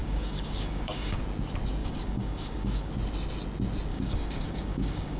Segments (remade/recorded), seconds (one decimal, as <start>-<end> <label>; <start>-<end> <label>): 0.0-1.2 remade; 1.2-1.8 recorded; 1.8-2.9 remade; 2.9-3.9 recorded; 3.9-5.2 remade